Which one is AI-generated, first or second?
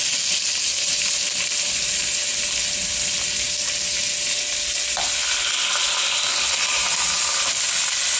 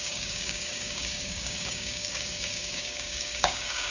second